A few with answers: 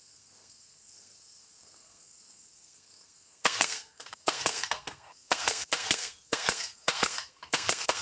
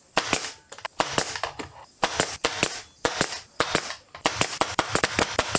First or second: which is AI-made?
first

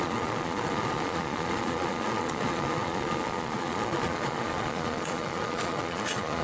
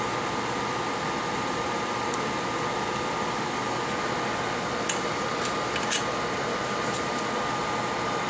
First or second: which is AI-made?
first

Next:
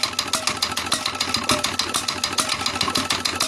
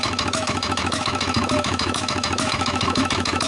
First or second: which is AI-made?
second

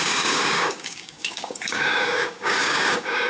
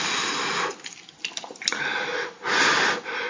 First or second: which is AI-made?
first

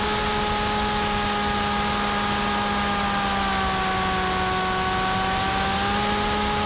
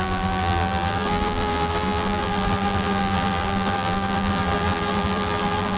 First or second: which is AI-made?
second